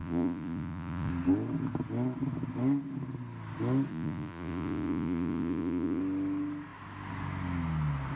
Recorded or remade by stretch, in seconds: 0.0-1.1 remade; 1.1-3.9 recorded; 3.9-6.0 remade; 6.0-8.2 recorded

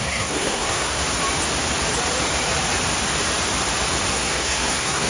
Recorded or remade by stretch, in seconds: 0.0-1.0 remade; 1.0-4.1 recorded; 4.1-5.1 remade

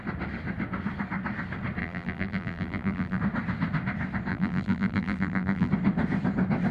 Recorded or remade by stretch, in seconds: 0.0-1.8 recorded; 1.8-3.2 remade; 3.2-4.3 recorded; 4.3-5.7 remade; 5.7-6.7 recorded

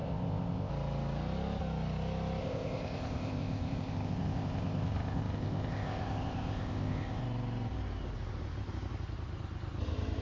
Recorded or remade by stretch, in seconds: 0.0-0.7 remade; 0.7-2.4 recorded; 2.4-7.2 remade; 7.2-10.2 recorded